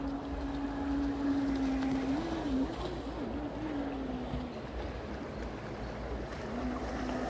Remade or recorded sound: recorded